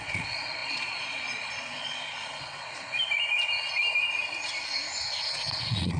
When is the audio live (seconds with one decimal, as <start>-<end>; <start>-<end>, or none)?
3.0-5.3